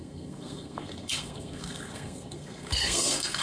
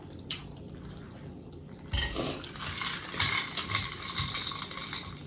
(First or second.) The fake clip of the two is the first